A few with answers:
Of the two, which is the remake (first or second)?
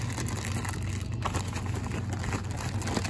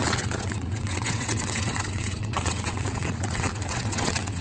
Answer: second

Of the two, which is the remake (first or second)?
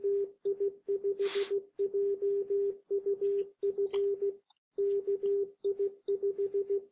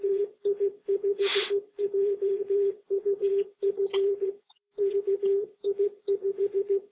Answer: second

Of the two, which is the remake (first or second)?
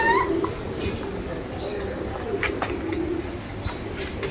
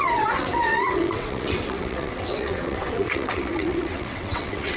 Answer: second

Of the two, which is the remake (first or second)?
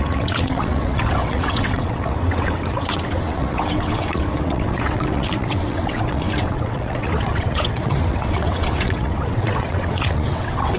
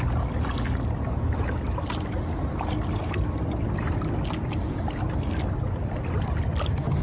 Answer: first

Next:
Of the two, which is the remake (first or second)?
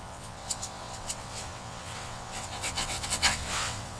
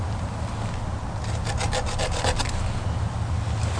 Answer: first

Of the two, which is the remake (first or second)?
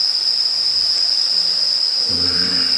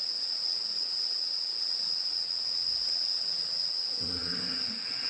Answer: second